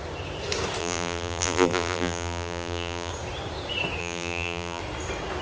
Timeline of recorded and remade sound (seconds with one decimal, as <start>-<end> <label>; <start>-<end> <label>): 0.0-0.8 recorded; 0.8-3.1 remade; 3.1-4.0 recorded; 4.0-4.8 remade; 4.8-5.4 recorded